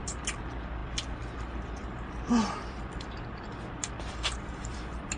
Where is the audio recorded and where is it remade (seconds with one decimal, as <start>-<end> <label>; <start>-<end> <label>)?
0.0-5.2 recorded